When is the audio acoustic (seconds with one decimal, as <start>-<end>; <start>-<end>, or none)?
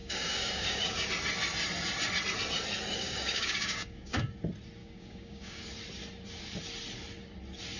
1.1-3.0; 4.3-4.8; 5.6-7.8